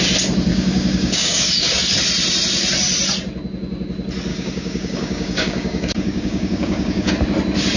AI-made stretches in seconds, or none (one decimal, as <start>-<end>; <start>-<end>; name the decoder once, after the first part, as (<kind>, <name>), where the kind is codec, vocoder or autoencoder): 0.5-1.8 (codec, DAC); 4.3-7.1